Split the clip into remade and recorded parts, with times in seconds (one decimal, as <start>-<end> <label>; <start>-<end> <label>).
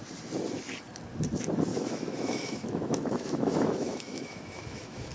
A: 0.0-1.7 recorded; 1.7-5.1 remade